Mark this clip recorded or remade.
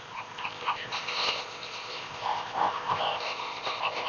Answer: remade